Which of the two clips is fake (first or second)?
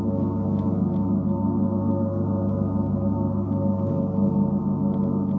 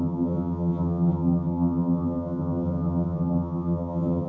second